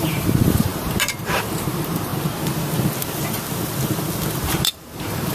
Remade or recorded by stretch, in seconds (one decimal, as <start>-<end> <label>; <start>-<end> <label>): 0.0-2.1 remade; 2.1-4.4 recorded; 4.4-5.3 remade